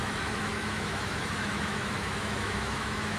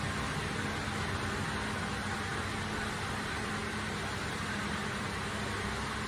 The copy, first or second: first